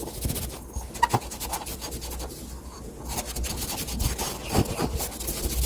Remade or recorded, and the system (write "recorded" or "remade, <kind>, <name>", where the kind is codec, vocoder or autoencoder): recorded